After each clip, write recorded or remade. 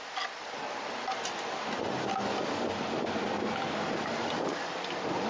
recorded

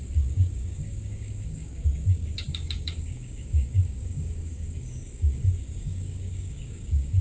remade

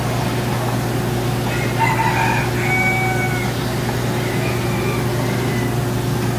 recorded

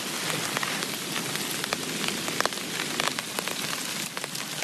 recorded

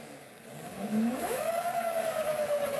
remade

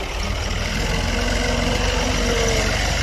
recorded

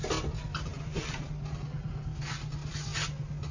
recorded